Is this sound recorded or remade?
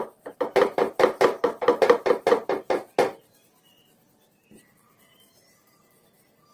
remade